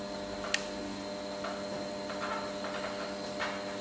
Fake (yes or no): no